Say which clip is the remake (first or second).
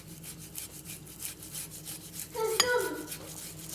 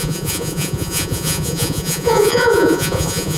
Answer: second